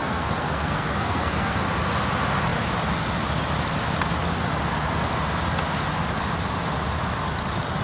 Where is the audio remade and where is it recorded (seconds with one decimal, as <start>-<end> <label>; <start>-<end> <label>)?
0.0-1.6 remade; 1.6-7.8 recorded